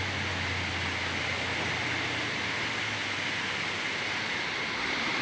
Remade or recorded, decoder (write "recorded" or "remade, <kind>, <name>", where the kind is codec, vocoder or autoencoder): recorded